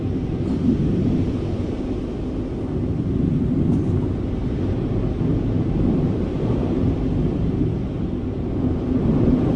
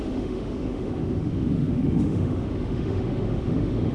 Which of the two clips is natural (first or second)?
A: first